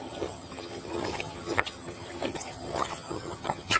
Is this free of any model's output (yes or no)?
no